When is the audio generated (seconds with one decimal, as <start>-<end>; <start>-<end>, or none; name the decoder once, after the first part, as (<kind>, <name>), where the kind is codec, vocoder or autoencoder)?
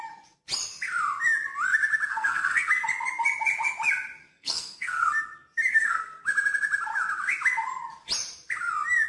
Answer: 2.1-2.7 (codec, SNAC); 4.3-5.1; 5.7-6.2